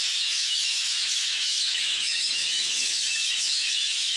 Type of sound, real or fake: fake